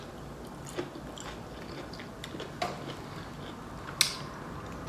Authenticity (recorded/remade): recorded